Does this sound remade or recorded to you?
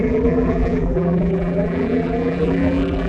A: remade